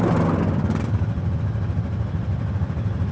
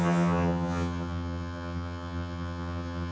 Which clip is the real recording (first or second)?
first